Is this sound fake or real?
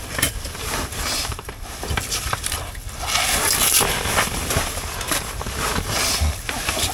real